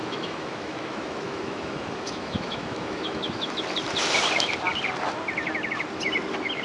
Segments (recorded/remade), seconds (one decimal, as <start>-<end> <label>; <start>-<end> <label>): 0.0-3.5 remade; 3.5-6.6 recorded

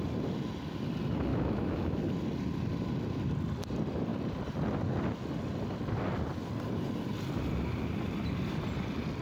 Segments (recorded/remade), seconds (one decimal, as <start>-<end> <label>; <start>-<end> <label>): 0.0-1.3 recorded; 1.3-2.0 remade; 2.0-9.2 recorded

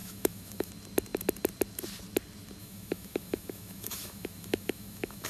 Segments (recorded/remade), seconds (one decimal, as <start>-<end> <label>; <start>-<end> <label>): 0.0-0.7 remade; 0.7-2.6 recorded; 2.6-5.3 remade